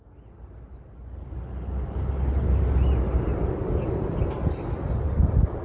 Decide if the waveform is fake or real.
real